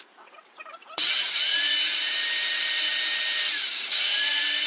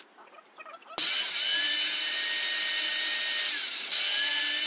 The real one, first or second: second